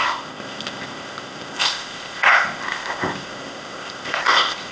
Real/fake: fake